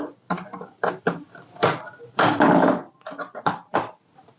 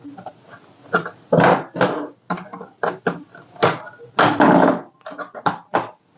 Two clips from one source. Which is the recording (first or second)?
second